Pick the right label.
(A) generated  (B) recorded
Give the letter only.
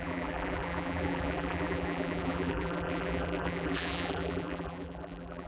A